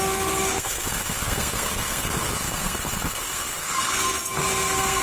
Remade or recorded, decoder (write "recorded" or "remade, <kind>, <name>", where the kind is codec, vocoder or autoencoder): remade, codec, SNAC